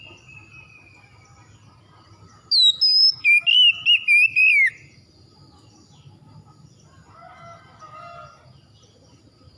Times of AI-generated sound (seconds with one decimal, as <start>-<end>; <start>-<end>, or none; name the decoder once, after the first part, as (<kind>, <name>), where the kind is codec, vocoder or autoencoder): none